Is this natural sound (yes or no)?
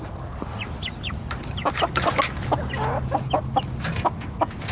yes